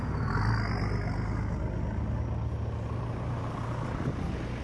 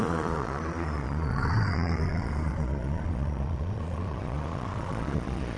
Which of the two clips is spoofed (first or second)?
second